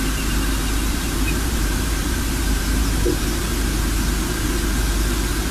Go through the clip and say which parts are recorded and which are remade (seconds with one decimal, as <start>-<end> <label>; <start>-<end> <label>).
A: 0.0-0.9 recorded; 0.9-3.4 remade; 3.4-5.5 recorded